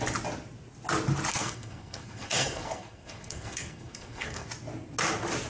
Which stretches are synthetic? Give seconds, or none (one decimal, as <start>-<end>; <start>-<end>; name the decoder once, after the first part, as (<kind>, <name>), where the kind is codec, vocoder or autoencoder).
1.3-4.5 (codec, SNAC)